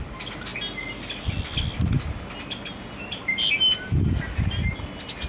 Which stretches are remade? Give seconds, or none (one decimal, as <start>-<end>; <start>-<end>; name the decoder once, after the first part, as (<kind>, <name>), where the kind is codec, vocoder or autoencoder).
none

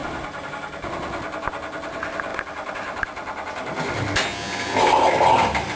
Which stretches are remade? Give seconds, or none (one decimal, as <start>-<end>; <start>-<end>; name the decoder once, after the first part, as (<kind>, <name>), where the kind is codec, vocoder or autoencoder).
none

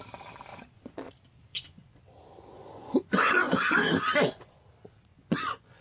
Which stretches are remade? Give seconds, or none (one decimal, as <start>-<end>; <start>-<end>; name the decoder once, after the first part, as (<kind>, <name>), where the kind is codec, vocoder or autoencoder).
0.5-1.1 (vocoder, Vocos); 1.5-2.0; 2.6-4.6; 5.1-5.8

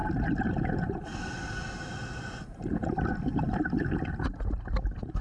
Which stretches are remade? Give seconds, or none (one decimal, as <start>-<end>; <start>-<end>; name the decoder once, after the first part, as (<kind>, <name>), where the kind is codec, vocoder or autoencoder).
none